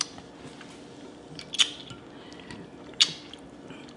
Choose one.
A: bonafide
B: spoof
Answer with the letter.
A